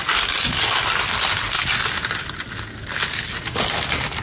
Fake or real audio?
real